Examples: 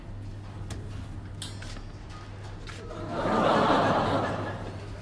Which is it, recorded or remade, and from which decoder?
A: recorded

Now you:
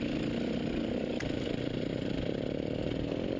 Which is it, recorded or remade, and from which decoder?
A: recorded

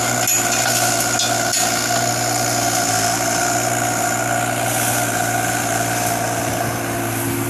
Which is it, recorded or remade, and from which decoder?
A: recorded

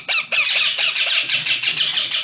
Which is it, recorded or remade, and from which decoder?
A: recorded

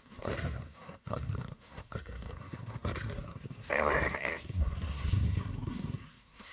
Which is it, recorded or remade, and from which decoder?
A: remade, codec, SNAC